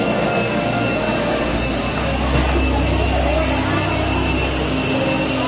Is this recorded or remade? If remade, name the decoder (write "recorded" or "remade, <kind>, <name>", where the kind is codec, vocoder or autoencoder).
recorded